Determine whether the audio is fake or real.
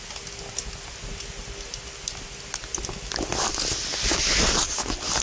real